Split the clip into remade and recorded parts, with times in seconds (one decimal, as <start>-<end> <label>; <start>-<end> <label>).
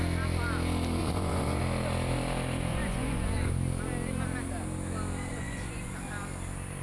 0.0-1.0 recorded; 1.0-1.6 remade; 1.6-2.7 recorded; 2.7-3.5 remade; 3.5-5.3 recorded; 5.3-5.9 remade; 5.9-6.8 recorded